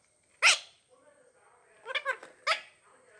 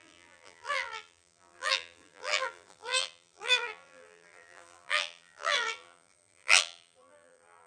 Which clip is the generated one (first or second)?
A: second